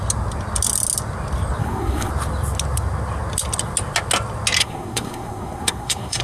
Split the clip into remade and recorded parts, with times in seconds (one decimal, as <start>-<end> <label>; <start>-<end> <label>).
0.0-1.6 recorded; 1.6-2.1 remade; 2.1-4.6 recorded; 4.6-6.2 remade